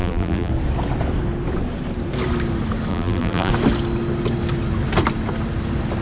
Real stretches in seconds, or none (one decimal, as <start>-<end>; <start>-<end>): 0.5-2.9; 3.5-6.0